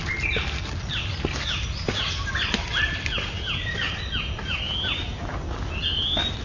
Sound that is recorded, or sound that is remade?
recorded